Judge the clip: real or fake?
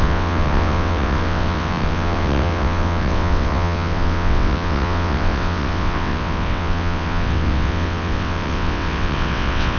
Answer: fake